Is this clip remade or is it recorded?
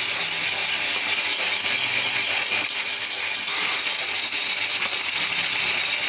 recorded